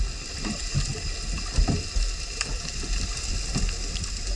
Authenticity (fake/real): real